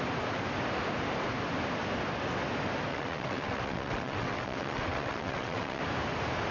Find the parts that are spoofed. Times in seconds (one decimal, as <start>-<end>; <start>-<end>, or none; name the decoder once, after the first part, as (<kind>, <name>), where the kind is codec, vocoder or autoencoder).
2.9-5.8 (vocoder, WaveNeXt)